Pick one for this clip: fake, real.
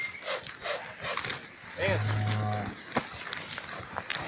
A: real